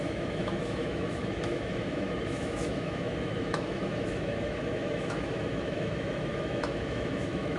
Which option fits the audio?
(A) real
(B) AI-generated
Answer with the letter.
B